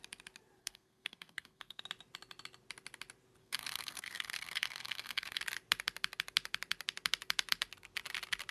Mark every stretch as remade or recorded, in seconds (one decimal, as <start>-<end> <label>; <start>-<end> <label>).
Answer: 0.0-0.6 recorded; 0.6-1.8 remade; 1.8-3.4 recorded; 3.4-5.4 remade; 5.4-8.5 recorded